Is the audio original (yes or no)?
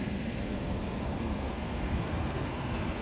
no